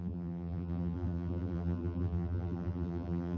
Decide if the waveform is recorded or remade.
remade